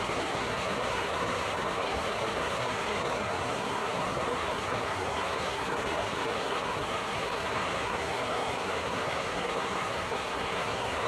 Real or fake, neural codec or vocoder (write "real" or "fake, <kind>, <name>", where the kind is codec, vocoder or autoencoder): fake, codec, SNAC